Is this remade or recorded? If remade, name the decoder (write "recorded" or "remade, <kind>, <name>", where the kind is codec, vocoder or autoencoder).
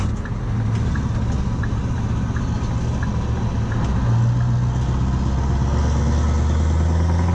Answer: recorded